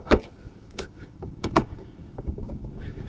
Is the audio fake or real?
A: fake